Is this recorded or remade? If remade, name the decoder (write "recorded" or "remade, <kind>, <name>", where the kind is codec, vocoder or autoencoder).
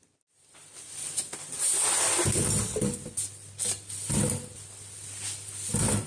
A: recorded